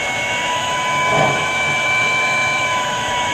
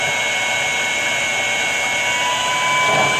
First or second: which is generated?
first